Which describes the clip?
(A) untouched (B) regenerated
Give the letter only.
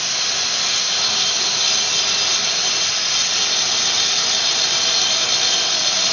A